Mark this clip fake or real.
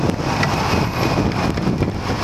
real